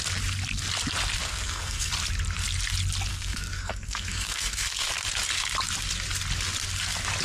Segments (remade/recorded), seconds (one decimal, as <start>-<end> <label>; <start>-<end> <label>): 0.0-1.2 recorded; 1.2-1.9 remade; 1.9-3.1 recorded; 3.1-4.9 remade; 4.9-7.2 recorded